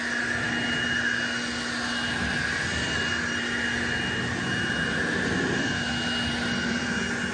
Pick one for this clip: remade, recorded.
recorded